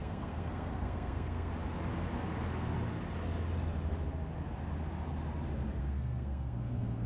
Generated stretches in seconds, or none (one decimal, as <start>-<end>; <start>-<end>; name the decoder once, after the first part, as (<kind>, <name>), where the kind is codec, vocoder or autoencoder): 0.0-1.5 (codec, SNAC); 5.8-7.1